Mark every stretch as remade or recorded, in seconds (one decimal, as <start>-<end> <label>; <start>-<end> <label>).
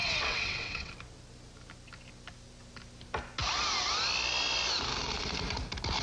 0.0-0.9 remade; 0.9-6.0 recorded